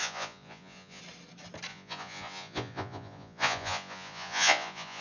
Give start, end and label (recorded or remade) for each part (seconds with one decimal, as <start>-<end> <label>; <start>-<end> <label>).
0.0-1.0 remade; 1.0-1.7 recorded; 1.7-5.0 remade